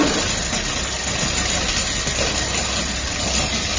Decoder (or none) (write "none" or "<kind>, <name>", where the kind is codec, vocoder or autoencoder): none